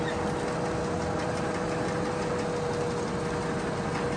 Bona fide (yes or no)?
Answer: yes